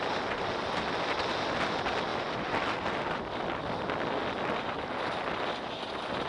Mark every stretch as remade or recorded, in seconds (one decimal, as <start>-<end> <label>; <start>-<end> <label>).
0.0-6.3 recorded